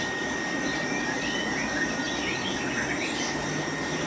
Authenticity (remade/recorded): recorded